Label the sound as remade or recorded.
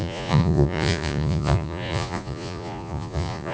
remade